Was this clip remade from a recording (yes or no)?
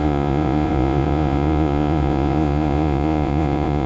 yes